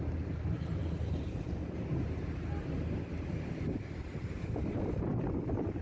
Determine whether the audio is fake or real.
real